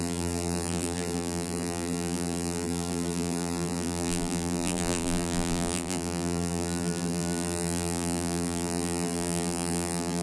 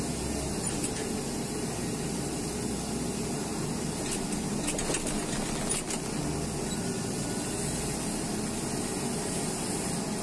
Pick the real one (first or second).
second